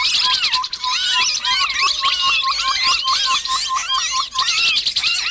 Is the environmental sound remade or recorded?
recorded